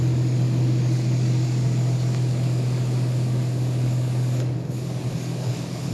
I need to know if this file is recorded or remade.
remade